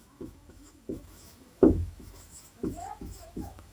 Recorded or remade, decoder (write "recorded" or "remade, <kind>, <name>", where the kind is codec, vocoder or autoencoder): remade, autoencoder, DAC-VAE